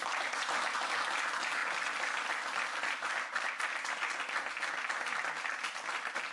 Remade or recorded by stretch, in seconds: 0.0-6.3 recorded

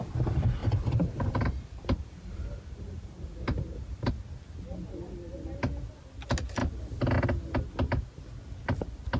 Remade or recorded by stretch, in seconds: 0.0-0.6 recorded; 0.6-4.1 remade; 4.1-9.2 recorded

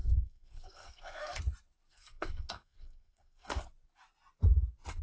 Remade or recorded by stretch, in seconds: 0.0-1.4 remade; 1.4-1.9 recorded; 1.9-3.6 remade; 3.6-5.0 recorded